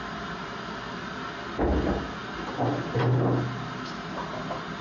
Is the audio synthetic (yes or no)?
no